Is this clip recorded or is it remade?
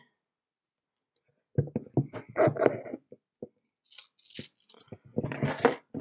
recorded